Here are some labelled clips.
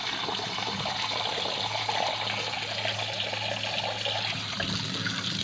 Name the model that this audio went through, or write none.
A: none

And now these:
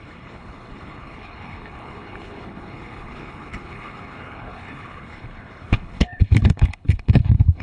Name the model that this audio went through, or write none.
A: codec, HILCodec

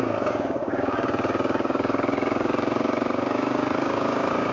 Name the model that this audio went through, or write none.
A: codec, DAC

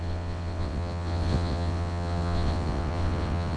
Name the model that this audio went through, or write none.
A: vocoder, WaveNeXt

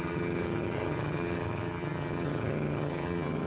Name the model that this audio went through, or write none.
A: vocoder, HiFi-GAN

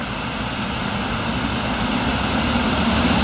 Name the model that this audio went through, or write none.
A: none